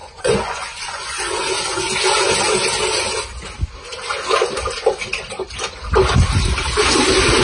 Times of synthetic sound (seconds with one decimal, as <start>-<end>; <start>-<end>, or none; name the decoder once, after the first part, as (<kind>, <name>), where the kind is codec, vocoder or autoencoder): 0.0-1.2 (vocoder, Vocos)